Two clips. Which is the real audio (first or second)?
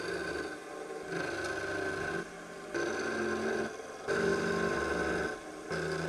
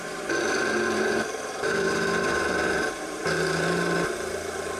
first